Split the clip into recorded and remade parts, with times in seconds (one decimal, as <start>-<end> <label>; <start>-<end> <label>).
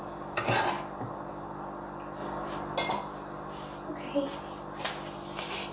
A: 0.0-5.7 recorded